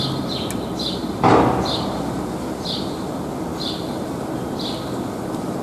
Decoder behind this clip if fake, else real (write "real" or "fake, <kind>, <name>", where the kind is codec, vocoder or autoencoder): real